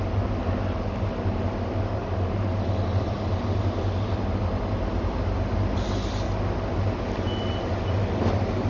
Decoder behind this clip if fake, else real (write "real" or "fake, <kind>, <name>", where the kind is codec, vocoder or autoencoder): real